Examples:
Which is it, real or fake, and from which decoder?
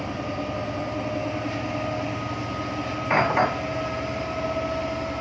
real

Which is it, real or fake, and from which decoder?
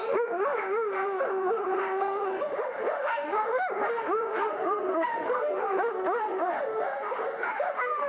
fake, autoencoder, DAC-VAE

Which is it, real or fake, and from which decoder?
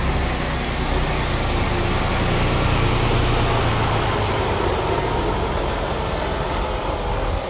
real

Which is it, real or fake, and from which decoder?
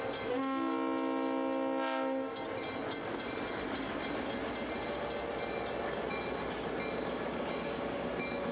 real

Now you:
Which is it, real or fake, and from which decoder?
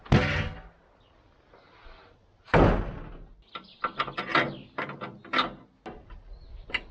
real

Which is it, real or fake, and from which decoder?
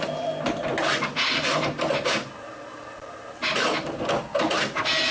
real